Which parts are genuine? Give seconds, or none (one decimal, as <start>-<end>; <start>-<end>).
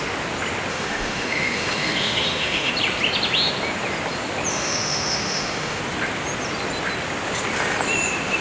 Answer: 0.0-0.7; 2.7-4.5; 5.8-8.4